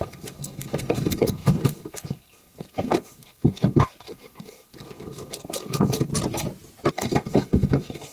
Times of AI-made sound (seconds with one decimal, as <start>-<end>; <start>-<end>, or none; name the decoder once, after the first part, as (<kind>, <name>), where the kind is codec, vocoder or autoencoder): 0.0-6.1 (codec, SNAC); 6.9-8.1

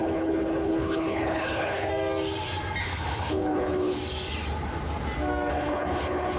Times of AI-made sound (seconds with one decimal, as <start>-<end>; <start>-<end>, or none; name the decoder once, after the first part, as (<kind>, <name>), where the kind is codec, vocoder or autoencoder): 0.0-1.9 (codec, HILCodec); 2.8-4.0; 5.5-6.4

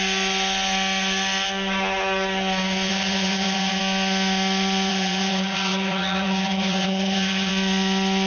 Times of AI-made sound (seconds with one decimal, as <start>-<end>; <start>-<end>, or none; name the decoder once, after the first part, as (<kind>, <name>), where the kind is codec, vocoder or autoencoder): 2.9-3.8 (vocoder, HiFi-GAN); 4.9-7.5

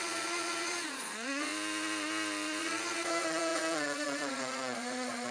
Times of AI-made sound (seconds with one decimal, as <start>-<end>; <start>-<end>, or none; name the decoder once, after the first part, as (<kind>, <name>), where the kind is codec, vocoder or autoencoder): 0.0-1.5 (vocoder, Vocos); 2.6-5.3

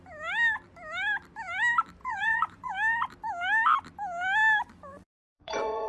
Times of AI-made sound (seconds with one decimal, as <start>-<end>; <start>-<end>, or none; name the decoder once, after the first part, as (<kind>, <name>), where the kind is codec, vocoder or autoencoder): 2.0-2.7 (vocoder, Vocos); 4.9-5.9

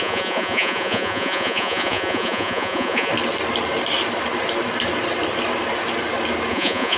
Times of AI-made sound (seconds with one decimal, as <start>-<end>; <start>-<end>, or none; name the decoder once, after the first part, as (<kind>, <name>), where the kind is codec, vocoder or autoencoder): 0.0-3.1 (vocoder, Vocos); 6.5-7.0

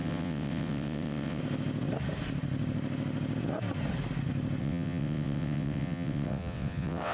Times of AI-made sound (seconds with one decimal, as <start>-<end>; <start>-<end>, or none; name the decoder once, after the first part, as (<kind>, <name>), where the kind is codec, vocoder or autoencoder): 0.0-1.4 (vocoder, WaveNeXt); 4.6-7.1

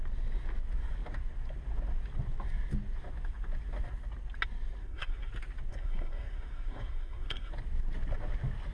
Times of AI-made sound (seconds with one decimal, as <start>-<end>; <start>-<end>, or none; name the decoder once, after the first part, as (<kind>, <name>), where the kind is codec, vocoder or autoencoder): 4.8-5.3 (codec, SNAC); 5.7-7.5